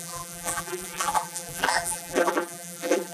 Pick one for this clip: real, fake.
fake